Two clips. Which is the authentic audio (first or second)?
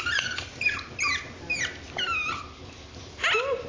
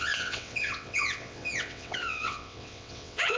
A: first